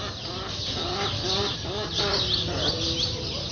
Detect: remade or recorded recorded